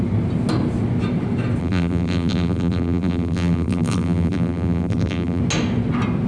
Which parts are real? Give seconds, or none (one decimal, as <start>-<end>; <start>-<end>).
0.0-1.6; 5.4-6.3